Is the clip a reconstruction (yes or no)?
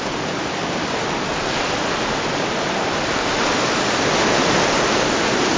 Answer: no